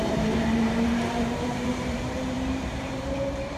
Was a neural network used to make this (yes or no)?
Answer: yes